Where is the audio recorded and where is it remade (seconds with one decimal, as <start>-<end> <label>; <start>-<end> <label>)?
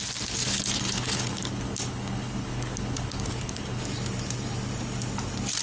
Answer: 0.0-0.4 recorded; 0.4-3.8 remade; 3.8-5.6 recorded